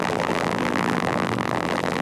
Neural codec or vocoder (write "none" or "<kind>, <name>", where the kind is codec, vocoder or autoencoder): vocoder, BigVGAN v2